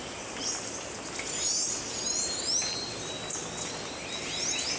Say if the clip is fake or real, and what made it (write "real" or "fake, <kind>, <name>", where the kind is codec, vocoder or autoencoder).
real